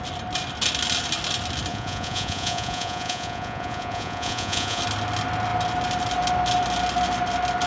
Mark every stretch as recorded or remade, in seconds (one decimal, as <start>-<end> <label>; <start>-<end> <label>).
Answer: 0.0-1.7 recorded; 1.7-4.8 remade; 4.8-7.7 recorded